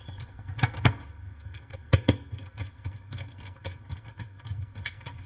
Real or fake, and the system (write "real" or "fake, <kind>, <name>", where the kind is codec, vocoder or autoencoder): fake, codec, SNAC